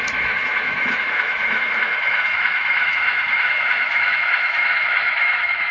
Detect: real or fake fake